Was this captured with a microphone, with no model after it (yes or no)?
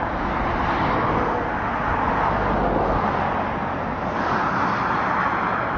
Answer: yes